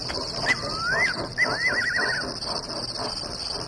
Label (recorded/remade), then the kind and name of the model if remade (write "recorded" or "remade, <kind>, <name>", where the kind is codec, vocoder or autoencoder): recorded